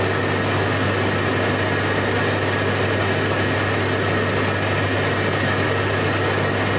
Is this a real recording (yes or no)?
yes